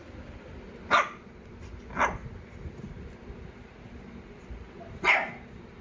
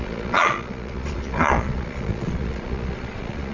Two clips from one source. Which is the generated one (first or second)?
second